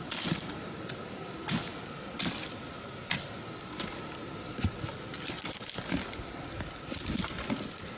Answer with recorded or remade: recorded